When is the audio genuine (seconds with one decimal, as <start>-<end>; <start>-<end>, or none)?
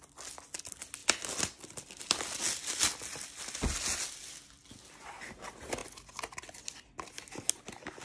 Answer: 0.0-8.0